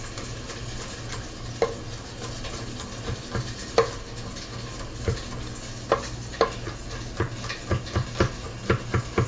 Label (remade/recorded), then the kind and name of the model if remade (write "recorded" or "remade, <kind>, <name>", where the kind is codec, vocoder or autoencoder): recorded